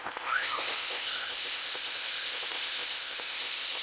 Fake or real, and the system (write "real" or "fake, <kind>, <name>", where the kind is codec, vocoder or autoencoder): fake, codec, ZipCodec